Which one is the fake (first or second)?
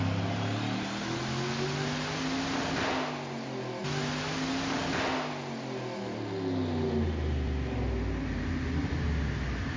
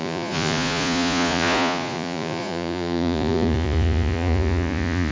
second